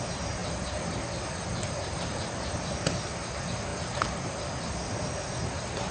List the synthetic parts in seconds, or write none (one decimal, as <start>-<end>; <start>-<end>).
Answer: 0.4-2.9